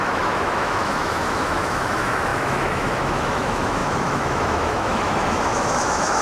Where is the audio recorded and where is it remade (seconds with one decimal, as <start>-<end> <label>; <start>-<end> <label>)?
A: 0.0-6.2 remade